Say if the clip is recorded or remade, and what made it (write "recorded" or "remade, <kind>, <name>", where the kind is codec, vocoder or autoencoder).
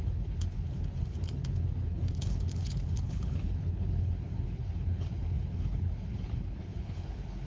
remade, codec, HILCodec